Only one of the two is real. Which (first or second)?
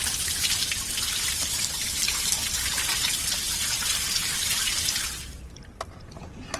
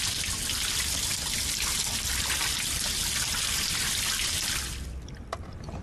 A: second